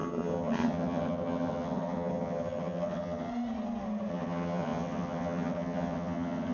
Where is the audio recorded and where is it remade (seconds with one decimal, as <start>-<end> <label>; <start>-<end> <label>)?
0.0-3.3 remade; 3.3-4.1 recorded; 4.1-6.5 remade